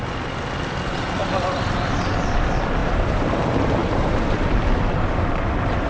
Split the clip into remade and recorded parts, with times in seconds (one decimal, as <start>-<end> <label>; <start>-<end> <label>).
0.0-2.8 recorded; 2.8-3.3 remade; 3.3-3.8 recorded; 3.8-5.9 remade